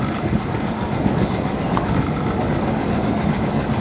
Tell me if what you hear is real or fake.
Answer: fake